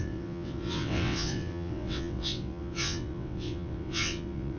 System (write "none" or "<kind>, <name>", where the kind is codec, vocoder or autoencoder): vocoder, WaveNeXt